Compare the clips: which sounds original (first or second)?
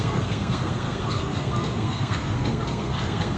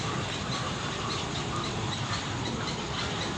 second